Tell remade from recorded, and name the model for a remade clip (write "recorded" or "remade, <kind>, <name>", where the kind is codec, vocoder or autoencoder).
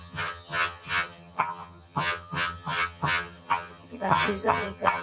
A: remade, vocoder, HiFi-GAN